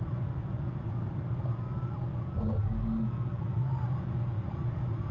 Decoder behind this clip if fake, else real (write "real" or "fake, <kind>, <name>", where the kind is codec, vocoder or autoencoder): real